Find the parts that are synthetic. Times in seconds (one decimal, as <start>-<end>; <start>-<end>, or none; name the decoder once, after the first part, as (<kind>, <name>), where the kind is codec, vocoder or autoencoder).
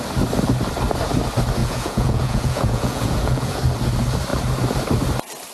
1.6-3.6 (vocoder, Vocos)